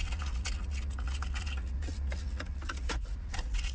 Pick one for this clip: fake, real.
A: fake